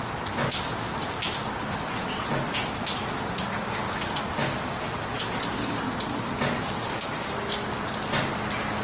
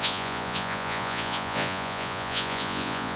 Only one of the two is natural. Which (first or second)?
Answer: first